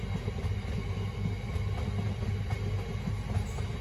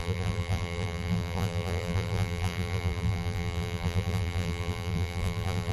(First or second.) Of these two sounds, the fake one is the second